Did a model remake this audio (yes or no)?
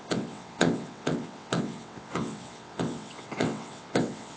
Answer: yes